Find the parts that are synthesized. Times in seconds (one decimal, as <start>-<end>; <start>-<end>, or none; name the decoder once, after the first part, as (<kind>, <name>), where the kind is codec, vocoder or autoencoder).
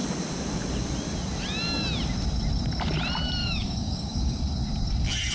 3.4-4.4 (codec, DAC)